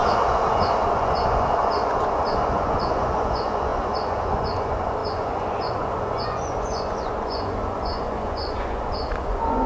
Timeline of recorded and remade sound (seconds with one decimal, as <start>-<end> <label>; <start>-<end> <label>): 0.0-9.7 remade